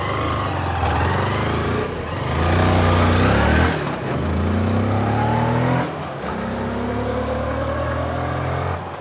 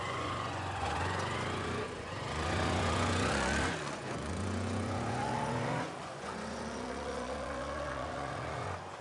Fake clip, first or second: second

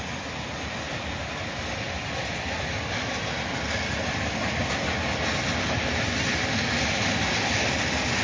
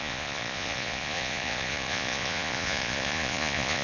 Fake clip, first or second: second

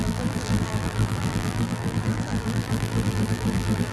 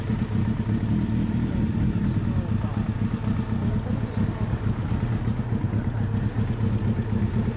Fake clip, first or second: first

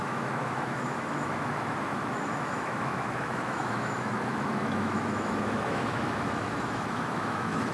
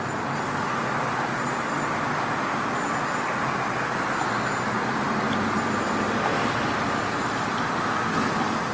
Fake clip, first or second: first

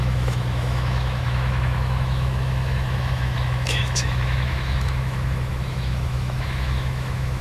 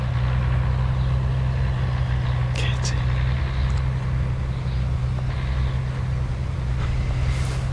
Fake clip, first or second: first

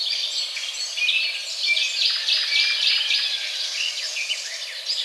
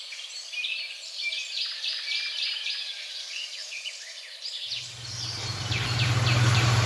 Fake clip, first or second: second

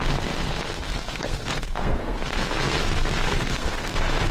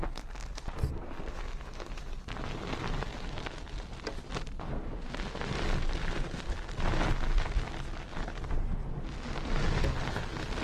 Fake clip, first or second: first